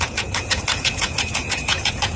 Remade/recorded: remade